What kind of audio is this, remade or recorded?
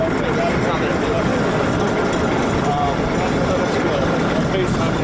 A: recorded